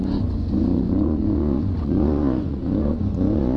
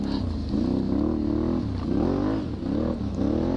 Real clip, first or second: second